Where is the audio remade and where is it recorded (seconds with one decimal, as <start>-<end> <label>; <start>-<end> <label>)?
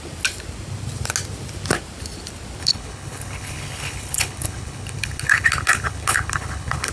0.0-2.6 recorded; 2.6-6.9 remade